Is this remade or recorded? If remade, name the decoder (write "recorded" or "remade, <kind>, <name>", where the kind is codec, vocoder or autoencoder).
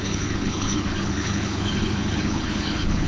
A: remade, codec, HILCodec